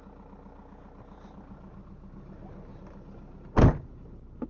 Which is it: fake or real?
real